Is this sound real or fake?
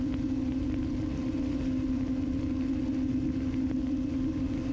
real